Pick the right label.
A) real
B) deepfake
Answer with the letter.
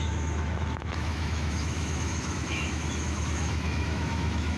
B